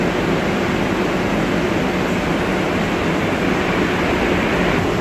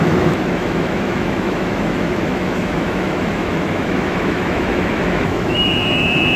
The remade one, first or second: second